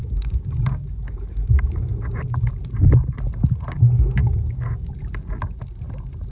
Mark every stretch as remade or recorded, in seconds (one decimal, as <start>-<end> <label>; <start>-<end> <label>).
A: 0.0-2.5 remade; 2.5-4.2 recorded; 4.2-4.9 remade; 4.9-6.3 recorded

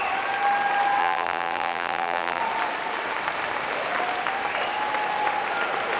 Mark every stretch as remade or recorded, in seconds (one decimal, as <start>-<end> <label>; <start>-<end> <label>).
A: 0.0-1.0 recorded; 1.0-2.4 remade; 2.4-6.0 recorded

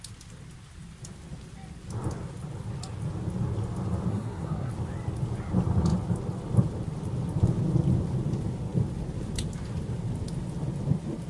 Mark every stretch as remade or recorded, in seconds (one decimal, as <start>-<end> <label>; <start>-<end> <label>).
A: 0.0-4.1 recorded; 4.1-4.7 remade; 4.7-11.3 recorded

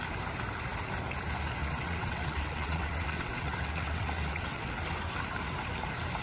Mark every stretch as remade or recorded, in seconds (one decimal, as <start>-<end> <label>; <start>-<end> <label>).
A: 0.0-1.6 recorded; 1.6-4.7 remade; 4.7-6.2 recorded

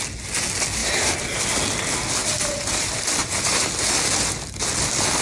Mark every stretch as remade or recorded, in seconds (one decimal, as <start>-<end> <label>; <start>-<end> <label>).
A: 0.0-0.8 recorded; 0.8-1.4 remade; 1.4-2.2 recorded; 2.2-3.7 remade; 3.7-5.2 recorded

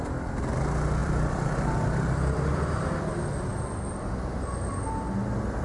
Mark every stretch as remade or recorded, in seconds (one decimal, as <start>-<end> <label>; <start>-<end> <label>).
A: 0.0-1.0 recorded; 1.0-3.1 remade; 3.1-5.6 recorded